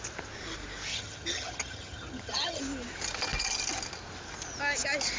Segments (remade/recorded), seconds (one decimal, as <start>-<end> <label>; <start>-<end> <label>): 0.0-0.9 recorded; 0.9-2.6 remade; 2.6-5.2 recorded